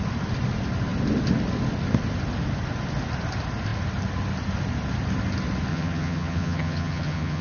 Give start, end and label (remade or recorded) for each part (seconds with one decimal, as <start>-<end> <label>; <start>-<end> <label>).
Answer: 0.0-5.7 recorded; 5.7-7.4 remade